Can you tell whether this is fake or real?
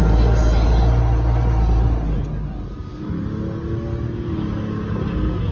real